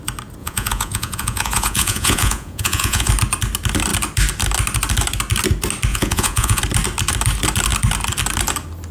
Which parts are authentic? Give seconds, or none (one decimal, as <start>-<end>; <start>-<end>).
0.0-0.4; 3.1-5.9; 6.6-8.9